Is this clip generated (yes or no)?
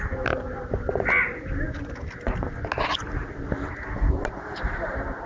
no